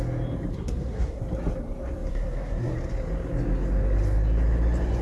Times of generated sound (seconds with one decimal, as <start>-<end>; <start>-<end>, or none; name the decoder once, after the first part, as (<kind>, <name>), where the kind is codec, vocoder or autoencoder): 0.5-1.2 (codec, SNAC); 2.1-2.7